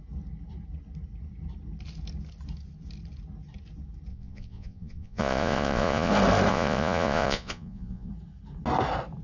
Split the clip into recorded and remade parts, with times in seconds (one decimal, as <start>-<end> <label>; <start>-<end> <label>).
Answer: 0.0-4.1 recorded; 4.1-6.1 remade; 6.1-6.5 recorded; 6.5-8.1 remade; 8.1-9.2 recorded